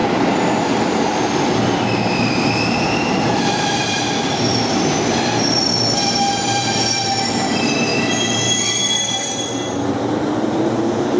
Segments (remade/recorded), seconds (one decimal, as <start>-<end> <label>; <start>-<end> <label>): 0.0-7.9 remade; 7.9-8.8 recorded; 8.8-9.6 remade; 9.6-10.4 recorded; 10.4-11.2 remade